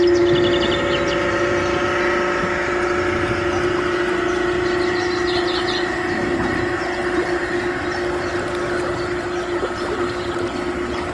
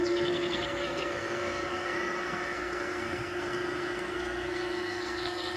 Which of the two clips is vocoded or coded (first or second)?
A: second